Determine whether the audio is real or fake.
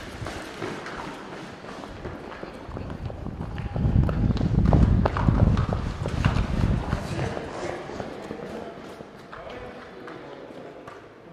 real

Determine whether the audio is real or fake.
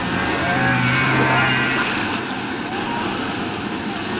real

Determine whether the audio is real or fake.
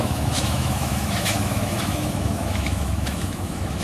fake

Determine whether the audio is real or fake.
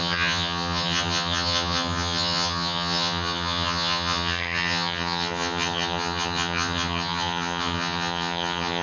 fake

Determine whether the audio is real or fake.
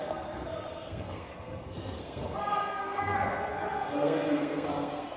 fake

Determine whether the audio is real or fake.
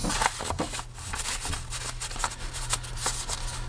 real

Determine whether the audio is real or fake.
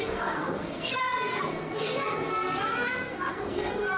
fake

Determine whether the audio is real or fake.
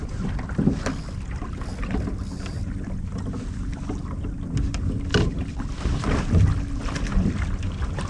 real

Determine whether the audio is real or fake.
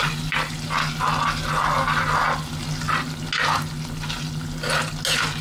real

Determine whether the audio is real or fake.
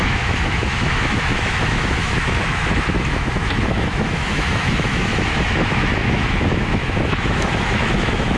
fake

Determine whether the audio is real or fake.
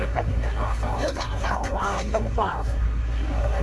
fake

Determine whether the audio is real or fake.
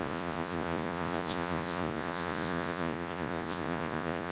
fake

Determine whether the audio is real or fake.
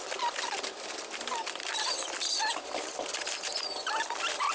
fake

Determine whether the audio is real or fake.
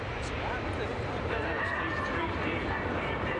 real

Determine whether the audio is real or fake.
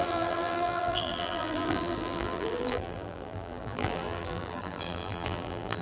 fake